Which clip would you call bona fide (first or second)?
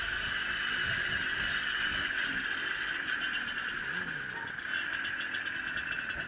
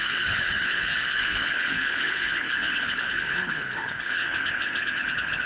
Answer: first